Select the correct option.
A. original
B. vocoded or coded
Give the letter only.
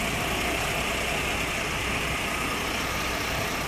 A